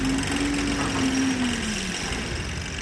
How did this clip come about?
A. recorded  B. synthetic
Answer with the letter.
A